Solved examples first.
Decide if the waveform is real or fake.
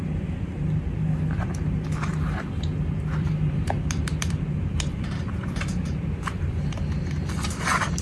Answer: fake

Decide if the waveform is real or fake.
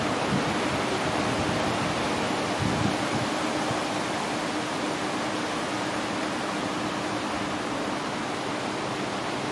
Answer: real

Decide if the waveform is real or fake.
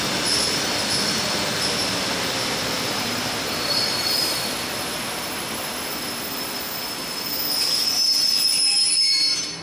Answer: real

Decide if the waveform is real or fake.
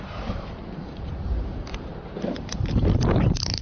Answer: fake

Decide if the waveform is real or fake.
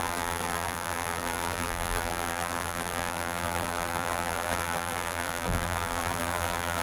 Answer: fake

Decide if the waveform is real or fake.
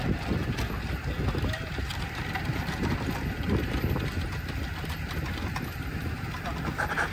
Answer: real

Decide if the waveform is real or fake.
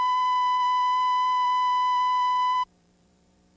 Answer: fake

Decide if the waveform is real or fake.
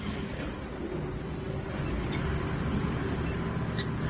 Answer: real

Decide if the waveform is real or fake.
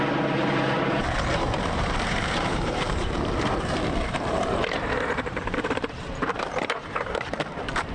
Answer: fake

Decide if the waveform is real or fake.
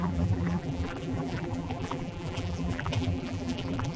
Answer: fake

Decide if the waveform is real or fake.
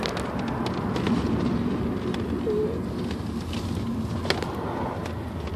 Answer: real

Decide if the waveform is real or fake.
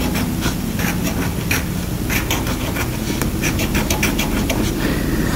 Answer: fake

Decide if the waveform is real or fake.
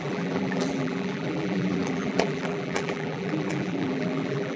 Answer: fake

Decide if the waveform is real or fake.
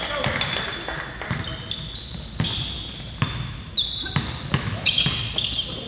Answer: real